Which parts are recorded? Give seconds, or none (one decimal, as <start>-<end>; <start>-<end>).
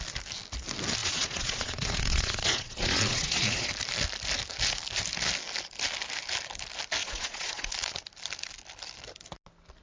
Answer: 0.0-1.0; 3.7-7.0; 7.7-9.8